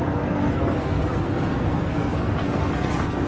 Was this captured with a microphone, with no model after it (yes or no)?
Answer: no